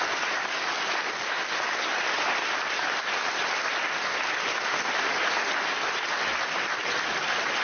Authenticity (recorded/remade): recorded